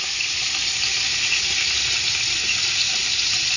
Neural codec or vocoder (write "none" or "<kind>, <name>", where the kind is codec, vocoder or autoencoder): none